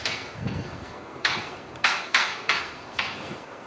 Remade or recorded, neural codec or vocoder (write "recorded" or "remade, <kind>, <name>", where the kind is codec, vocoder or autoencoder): remade, codec, SNAC